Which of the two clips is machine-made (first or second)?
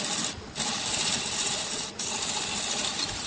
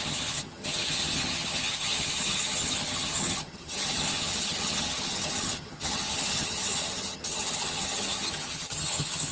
second